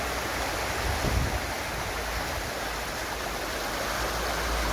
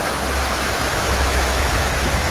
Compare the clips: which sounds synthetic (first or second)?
second